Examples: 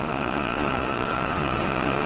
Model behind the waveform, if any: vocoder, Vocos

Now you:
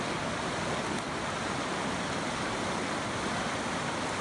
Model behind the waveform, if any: none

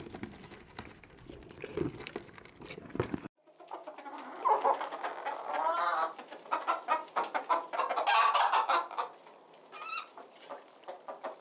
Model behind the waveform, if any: none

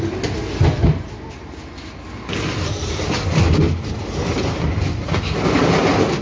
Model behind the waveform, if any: none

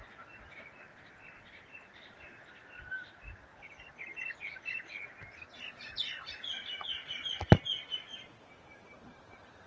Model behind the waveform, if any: none